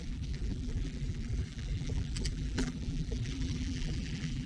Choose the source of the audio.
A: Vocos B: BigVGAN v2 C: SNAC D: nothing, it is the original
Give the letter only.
B